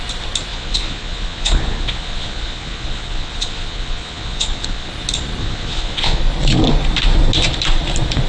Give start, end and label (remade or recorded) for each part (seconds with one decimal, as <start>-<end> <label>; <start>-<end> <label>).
0.0-0.5 recorded; 0.5-4.9 remade; 4.9-5.4 recorded; 5.4-6.2 remade; 6.2-8.3 recorded